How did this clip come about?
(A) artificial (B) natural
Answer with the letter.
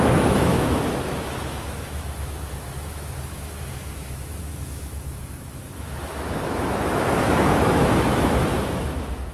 A